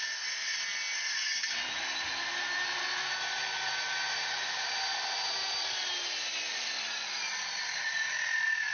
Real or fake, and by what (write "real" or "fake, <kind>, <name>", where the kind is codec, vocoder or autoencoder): real